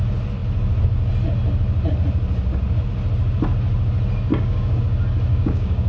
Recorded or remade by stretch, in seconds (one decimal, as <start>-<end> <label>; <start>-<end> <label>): 0.0-4.3 recorded; 4.3-4.8 remade; 4.8-5.3 recorded; 5.3-5.9 remade